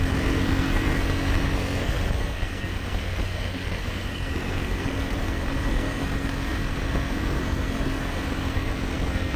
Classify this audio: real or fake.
fake